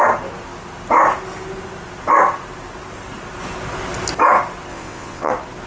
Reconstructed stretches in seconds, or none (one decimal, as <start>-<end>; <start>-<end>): 4.7-5.3